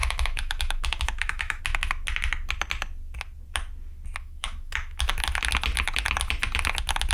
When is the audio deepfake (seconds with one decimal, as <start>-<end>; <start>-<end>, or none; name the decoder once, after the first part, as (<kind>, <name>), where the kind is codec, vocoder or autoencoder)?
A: 0.0-1.6 (autoencoder, DAC-VAE); 4.2-5.1